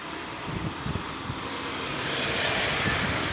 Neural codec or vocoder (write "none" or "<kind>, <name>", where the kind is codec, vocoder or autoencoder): none